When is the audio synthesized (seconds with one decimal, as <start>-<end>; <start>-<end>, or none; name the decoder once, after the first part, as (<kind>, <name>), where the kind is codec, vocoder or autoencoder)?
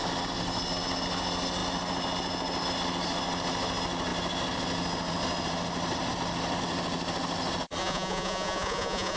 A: 7.8-9.2 (vocoder, Vocos)